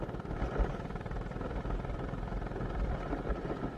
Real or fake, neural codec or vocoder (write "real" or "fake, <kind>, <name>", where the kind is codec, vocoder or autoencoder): fake, vocoder, BigVGAN v2